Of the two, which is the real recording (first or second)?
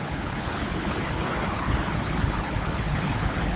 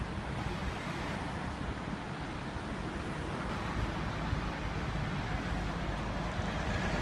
second